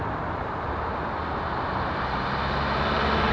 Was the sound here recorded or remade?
remade